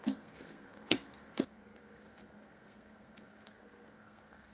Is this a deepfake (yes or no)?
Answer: yes